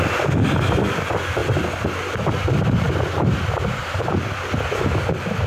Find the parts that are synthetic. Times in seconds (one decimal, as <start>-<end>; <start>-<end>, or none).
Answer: 1.4-2.9; 3.8-4.6